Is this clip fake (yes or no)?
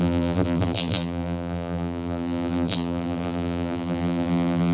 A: yes